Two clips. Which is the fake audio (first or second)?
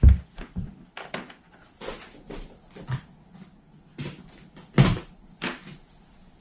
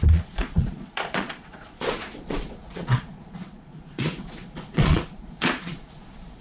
second